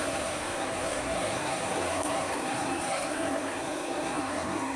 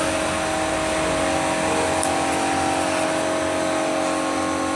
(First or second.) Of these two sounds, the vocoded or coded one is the first